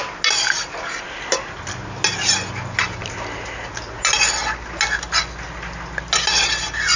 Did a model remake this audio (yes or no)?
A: no